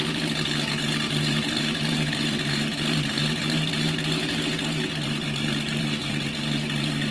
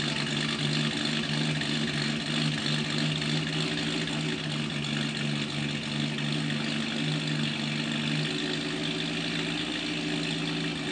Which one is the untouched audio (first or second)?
second